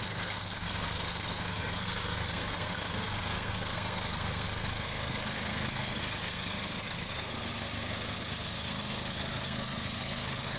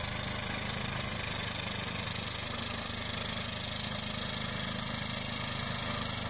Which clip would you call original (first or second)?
second